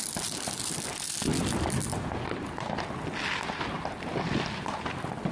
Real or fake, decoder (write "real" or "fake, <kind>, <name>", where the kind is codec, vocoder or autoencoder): real